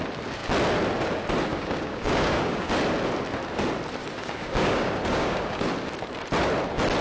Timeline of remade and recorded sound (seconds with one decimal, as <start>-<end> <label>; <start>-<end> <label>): 0.0-1.5 recorded; 1.5-2.7 remade; 2.7-4.0 recorded; 4.0-5.7 remade; 5.7-7.0 recorded